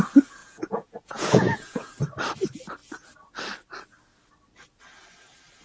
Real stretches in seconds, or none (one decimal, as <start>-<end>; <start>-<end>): 0.0-0.4; 1.9-5.6